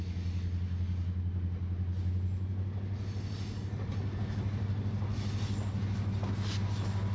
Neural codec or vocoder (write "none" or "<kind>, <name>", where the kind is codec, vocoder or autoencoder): none